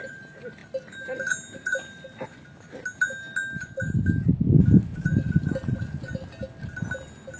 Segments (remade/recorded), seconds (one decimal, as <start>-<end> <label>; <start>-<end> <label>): 0.0-4.9 recorded; 4.9-5.8 remade; 5.8-7.4 recorded